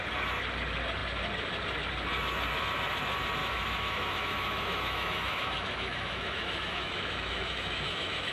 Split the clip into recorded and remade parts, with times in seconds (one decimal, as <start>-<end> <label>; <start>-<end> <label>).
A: 0.0-3.4 recorded; 3.4-8.3 remade